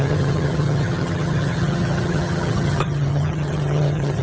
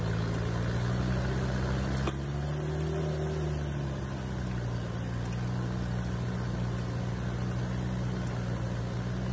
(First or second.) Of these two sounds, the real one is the second